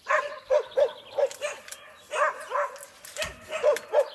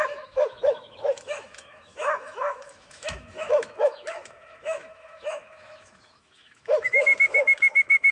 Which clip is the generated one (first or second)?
second